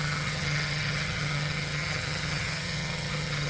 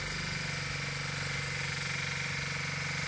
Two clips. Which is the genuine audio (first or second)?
second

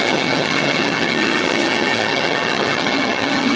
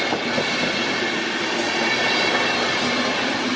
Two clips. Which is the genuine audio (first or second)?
second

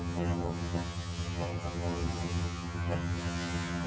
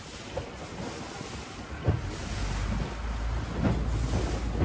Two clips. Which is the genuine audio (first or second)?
second